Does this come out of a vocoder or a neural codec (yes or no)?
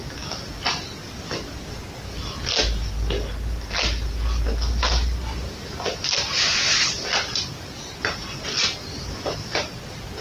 no